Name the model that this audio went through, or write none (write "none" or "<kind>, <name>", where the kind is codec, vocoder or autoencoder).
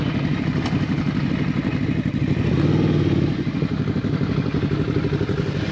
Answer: none